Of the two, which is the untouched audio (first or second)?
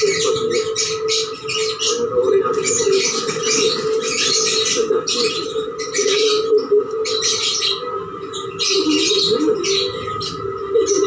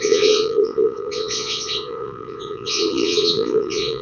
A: first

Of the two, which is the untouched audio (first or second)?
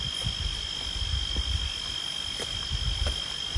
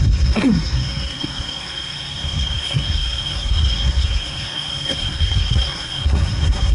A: first